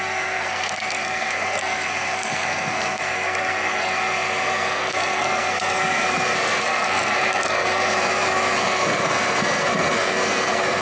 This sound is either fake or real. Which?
fake